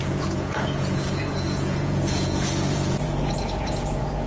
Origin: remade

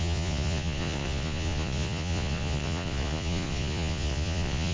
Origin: remade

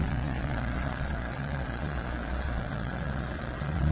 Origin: remade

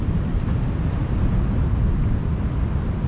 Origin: recorded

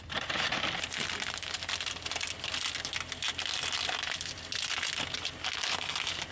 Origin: recorded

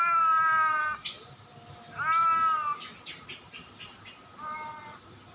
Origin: recorded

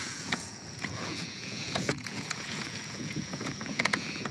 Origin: remade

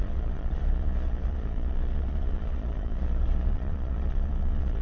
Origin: remade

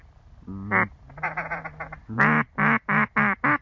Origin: recorded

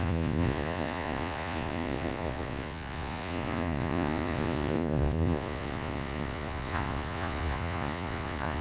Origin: remade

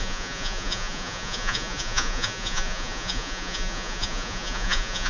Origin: remade